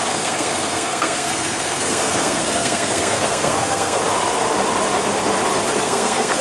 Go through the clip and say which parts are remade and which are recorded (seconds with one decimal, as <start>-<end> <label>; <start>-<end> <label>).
0.0-4.0 remade; 4.0-5.8 recorded; 5.8-6.4 remade